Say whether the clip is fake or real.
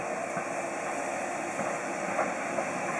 real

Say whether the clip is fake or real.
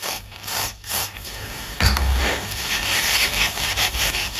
fake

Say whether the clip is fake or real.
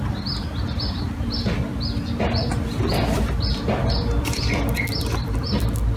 fake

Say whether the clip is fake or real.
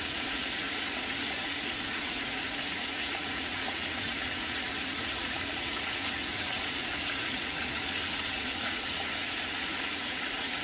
fake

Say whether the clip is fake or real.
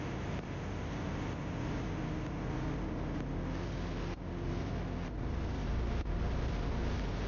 real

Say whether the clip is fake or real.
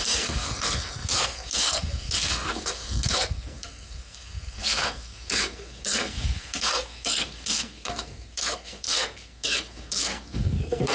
fake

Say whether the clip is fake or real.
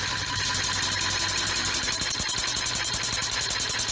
real